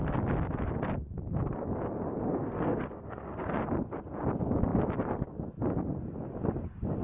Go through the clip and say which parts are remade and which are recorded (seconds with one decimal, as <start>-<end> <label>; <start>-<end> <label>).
0.0-2.3 recorded; 2.3-3.5 remade; 3.5-7.0 recorded